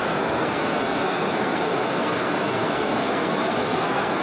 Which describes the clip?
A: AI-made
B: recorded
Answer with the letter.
A